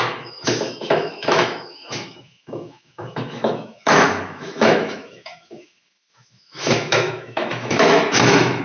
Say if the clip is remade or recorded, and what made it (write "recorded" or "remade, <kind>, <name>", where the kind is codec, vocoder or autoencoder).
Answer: remade, autoencoder, DAC-VAE